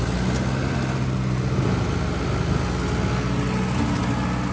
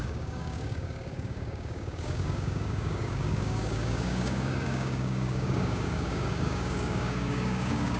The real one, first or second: first